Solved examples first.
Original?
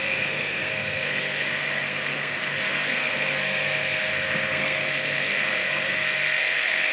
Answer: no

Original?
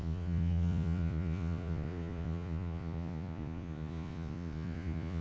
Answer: no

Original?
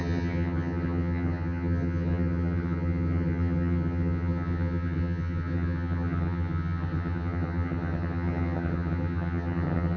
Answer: no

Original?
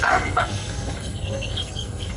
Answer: no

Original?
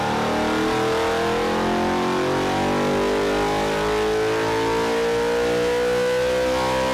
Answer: yes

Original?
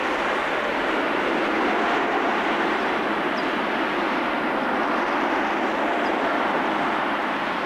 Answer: yes